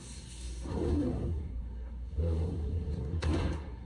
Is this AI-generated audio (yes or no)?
yes